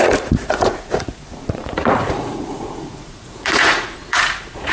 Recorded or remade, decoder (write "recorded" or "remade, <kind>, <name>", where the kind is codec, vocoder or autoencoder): remade, vocoder, Vocos